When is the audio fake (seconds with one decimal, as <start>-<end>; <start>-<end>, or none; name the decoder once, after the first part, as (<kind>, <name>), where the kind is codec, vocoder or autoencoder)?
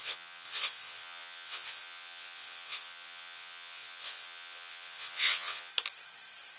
0.0-5.7 (vocoder, WaveNeXt)